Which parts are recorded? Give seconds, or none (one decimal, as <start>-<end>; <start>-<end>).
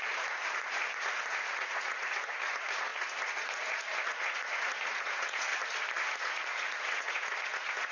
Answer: 5.5-6.1